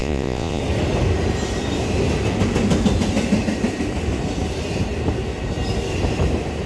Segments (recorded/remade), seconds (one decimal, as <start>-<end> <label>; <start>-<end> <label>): 0.0-0.6 remade; 0.6-6.7 recorded